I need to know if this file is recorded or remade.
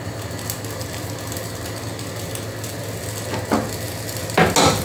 recorded